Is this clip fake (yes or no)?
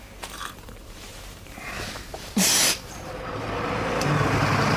yes